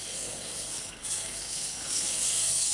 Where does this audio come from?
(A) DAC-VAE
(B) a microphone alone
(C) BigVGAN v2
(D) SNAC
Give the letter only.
D